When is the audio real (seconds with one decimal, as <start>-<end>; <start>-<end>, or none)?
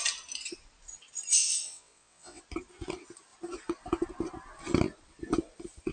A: 0.0-1.4; 2.4-5.9